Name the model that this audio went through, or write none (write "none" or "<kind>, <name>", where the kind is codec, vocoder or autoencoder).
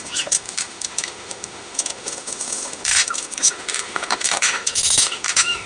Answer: autoencoder, DAC-VAE